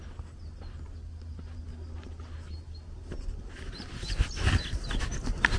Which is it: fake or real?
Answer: real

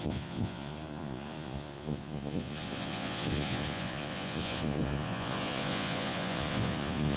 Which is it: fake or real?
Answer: fake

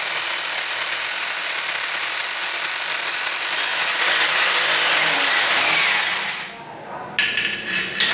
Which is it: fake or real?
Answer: real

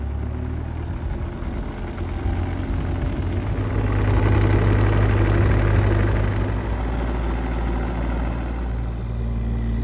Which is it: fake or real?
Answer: real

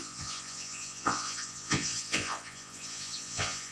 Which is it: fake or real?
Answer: fake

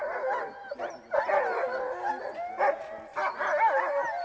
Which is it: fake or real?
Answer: real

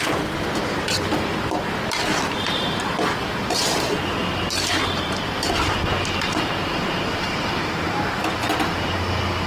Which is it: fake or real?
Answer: fake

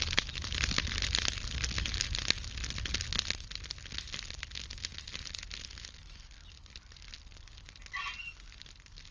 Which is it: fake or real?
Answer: real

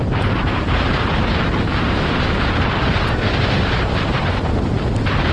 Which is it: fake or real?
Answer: fake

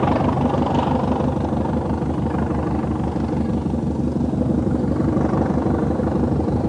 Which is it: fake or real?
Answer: real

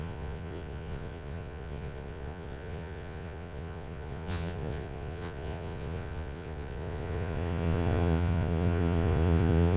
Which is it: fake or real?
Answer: fake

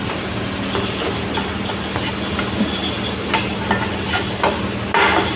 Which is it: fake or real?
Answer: real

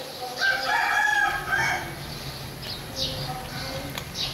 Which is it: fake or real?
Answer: real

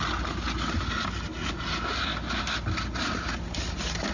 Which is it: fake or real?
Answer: real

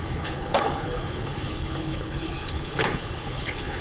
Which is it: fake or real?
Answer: fake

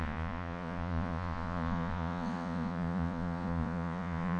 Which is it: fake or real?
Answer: fake